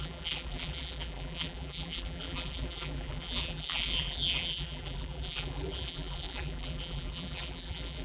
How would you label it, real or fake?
fake